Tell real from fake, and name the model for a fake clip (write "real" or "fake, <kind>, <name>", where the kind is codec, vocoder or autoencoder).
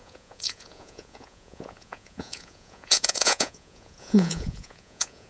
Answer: fake, vocoder, Vocos